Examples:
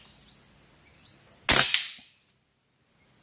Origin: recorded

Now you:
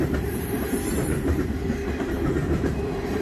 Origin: remade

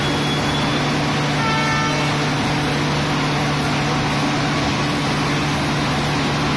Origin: recorded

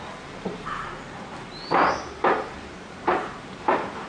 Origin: remade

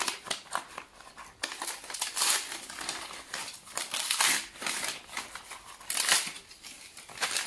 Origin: remade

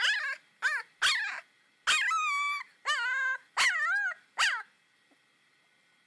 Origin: recorded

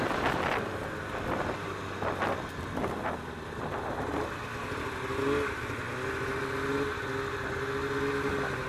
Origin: recorded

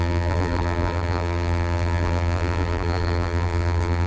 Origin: remade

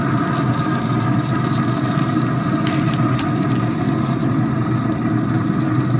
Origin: recorded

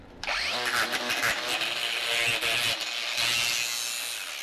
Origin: recorded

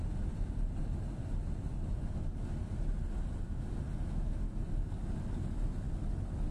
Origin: recorded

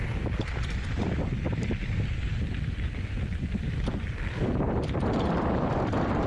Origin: remade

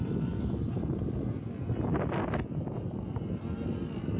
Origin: recorded